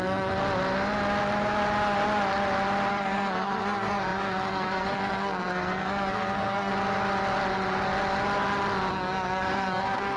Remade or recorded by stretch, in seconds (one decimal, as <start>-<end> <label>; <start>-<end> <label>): 0.0-0.4 remade; 0.4-2.9 recorded; 2.9-6.7 remade; 6.7-8.9 recorded; 8.9-10.2 remade